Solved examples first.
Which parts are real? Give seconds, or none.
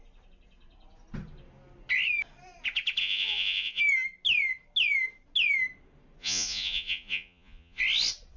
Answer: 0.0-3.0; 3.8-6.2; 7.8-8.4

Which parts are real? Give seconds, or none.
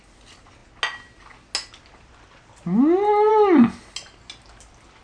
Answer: 0.0-5.0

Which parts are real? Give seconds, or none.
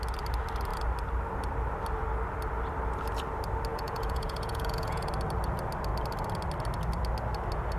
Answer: 0.0-3.7; 5.1-7.8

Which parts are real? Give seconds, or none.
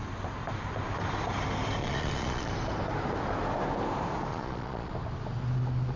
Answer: 0.0-1.8; 2.5-4.3; 4.9-6.0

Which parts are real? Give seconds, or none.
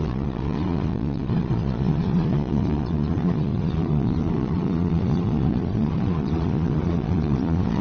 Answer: none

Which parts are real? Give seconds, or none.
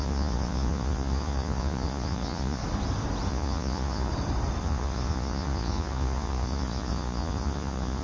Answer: 2.6-3.3; 4.1-4.6